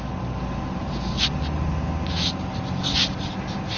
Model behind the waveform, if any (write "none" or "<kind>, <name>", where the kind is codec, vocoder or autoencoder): none